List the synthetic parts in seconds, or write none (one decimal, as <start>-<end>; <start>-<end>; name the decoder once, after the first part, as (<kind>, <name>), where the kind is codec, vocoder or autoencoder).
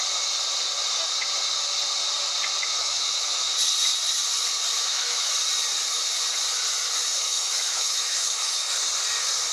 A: 2.8-3.5 (autoencoder, DAC-VAE); 4.7-5.3; 7.1-8.7